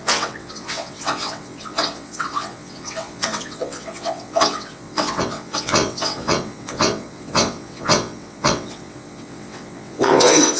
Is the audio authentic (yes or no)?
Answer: no